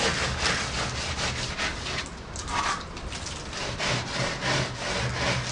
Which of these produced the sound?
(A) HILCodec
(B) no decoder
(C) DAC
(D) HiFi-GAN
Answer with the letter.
B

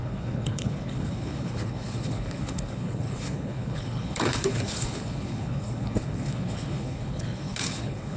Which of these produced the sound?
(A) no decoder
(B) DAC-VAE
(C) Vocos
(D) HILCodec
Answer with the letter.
D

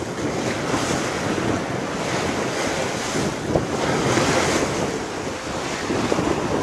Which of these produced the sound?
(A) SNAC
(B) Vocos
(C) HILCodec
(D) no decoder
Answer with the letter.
D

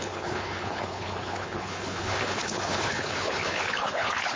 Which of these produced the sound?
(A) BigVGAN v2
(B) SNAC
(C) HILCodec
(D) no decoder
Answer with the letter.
C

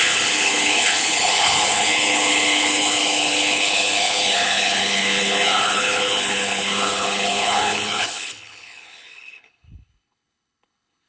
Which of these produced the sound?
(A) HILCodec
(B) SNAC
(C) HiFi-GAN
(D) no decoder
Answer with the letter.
A